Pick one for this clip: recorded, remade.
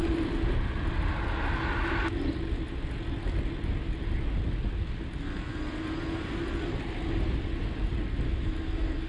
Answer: recorded